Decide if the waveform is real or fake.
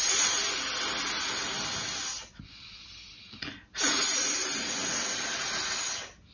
real